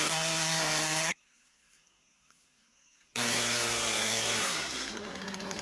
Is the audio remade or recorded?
remade